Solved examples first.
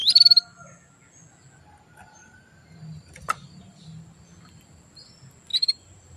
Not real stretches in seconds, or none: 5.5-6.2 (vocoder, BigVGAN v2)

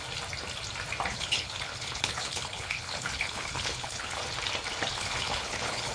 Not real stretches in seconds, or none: 1.1-4.2 (codec, HILCodec); 4.9-5.9